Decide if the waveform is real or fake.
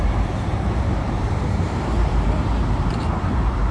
fake